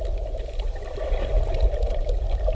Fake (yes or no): no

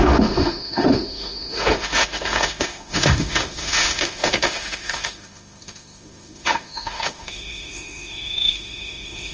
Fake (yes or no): yes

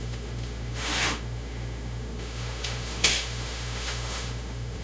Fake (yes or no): yes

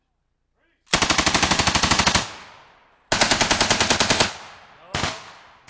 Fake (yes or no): no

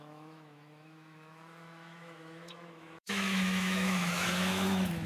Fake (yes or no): yes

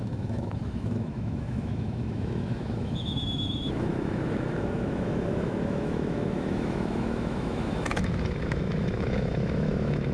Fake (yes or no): yes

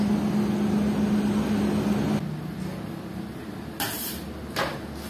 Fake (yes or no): no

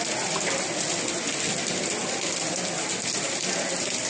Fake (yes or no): no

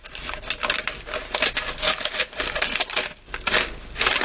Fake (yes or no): no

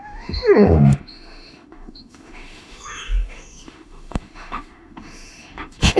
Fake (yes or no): yes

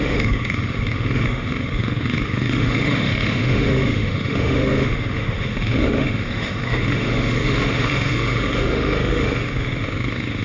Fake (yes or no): yes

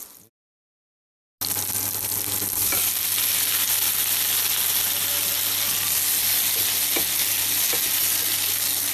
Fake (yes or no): no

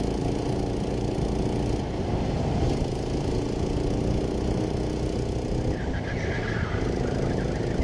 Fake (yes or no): no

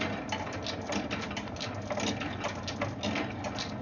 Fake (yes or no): no